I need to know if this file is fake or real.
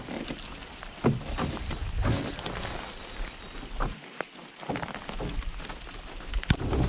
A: real